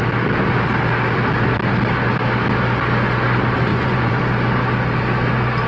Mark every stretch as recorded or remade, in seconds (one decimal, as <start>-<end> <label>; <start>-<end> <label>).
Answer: 0.0-3.7 recorded; 3.7-4.2 remade; 4.2-5.7 recorded